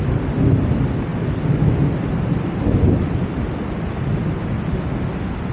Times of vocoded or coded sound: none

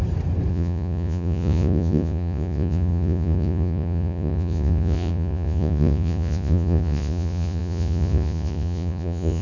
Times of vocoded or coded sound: 0.5-9.4 (vocoder, Vocos)

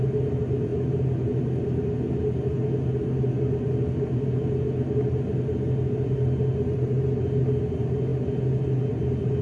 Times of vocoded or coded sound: none

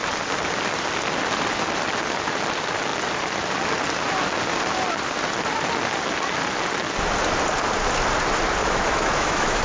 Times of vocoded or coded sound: 8.6-9.6 (autoencoder, DAC-VAE)

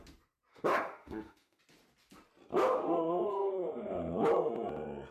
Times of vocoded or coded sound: 0.5-1.6 (autoencoder, DAC-VAE); 2.5-4.3

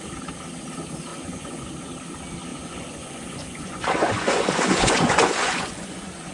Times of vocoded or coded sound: 1.1-1.7 (vocoder, Vocos); 2.5-6.3

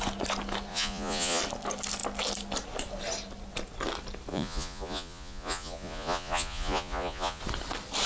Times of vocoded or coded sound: 0.7-1.4 (vocoder, Vocos); 4.3-7.4

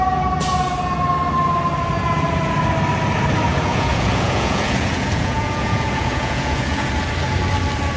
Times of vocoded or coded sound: 3.5-6.9 (vocoder, Vocos)